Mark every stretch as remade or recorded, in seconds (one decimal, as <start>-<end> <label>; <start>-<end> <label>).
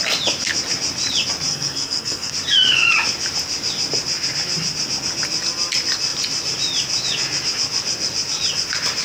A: 0.0-1.5 recorded; 1.5-2.3 remade; 2.3-9.0 recorded